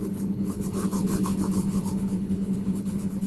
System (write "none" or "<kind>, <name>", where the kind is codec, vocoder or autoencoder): codec, HILCodec